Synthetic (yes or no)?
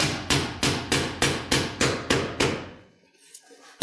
yes